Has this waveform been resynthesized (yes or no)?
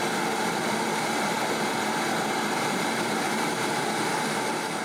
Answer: yes